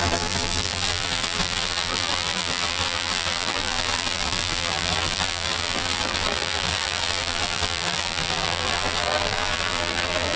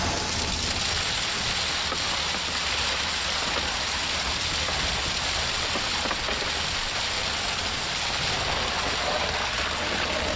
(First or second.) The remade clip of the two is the first